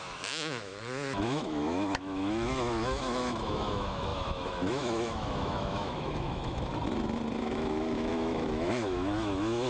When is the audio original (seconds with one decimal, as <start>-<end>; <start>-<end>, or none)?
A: 6.7-7.4